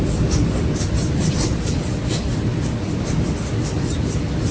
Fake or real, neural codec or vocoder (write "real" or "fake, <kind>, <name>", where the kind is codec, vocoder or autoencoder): real